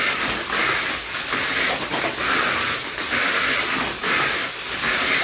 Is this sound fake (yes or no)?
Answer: no